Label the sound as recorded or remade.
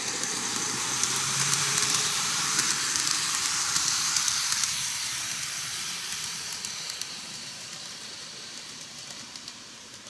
remade